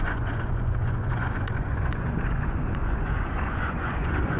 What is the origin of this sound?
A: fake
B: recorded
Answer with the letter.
A